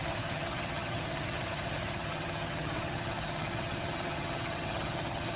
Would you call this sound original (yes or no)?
no